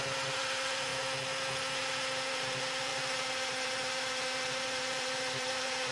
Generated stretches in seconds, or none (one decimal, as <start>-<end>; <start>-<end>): 0.0-0.9; 2.3-5.9